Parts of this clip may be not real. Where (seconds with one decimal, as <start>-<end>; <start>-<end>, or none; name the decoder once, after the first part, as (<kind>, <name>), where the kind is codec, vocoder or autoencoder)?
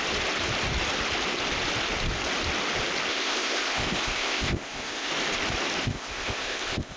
3.1-5.1 (codec, ZipCodec); 5.8-7.0